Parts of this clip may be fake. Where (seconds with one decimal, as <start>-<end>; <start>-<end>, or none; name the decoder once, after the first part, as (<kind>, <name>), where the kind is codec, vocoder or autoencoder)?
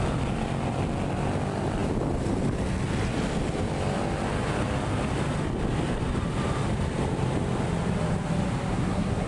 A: 8.7-9.3 (codec, SNAC)